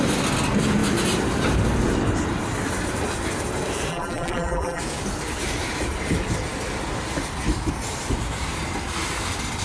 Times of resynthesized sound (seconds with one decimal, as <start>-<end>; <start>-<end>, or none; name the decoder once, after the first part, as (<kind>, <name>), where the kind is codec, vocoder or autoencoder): 3.9-4.8 (vocoder, BigVGAN v2)